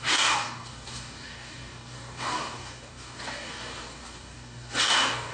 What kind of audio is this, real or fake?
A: fake